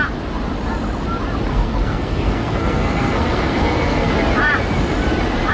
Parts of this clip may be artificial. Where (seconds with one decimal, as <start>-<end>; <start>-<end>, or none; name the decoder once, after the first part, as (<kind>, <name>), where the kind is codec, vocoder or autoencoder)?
1.5-4.1 (codec, SNAC)